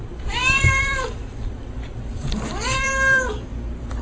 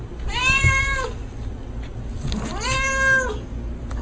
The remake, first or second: first